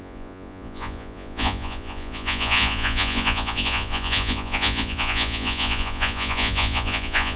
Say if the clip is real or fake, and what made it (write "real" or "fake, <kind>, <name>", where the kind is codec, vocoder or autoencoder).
fake, vocoder, Vocos